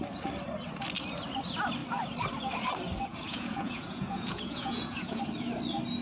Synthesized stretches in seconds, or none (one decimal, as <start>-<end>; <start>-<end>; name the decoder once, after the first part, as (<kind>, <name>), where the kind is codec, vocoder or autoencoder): 3.1-5.2 (vocoder, Vocos)